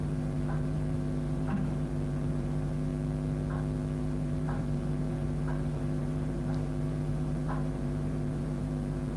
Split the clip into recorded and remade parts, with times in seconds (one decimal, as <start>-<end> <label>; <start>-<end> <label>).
0.0-2.9 remade; 2.9-4.0 recorded; 4.0-9.2 remade